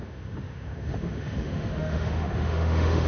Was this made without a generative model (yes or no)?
no